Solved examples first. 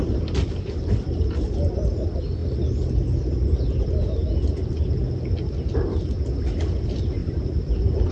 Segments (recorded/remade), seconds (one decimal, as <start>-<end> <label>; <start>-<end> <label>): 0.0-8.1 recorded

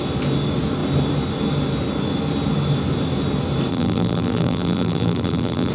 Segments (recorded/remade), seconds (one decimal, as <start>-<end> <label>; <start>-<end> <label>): 0.0-3.7 recorded; 3.7-5.7 remade

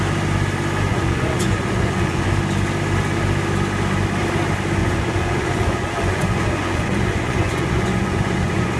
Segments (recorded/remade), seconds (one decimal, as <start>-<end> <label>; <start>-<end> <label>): 0.0-0.9 recorded; 0.9-2.3 remade; 2.3-4.8 recorded; 4.8-8.8 remade

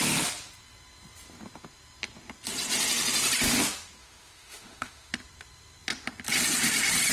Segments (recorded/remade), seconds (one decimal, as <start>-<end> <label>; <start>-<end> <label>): 0.0-4.0 recorded; 4.0-5.1 remade; 5.1-7.1 recorded

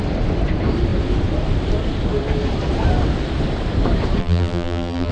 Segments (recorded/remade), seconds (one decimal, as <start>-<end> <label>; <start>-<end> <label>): 0.0-4.2 recorded; 4.2-5.1 remade